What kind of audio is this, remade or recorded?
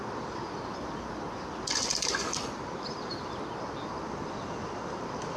recorded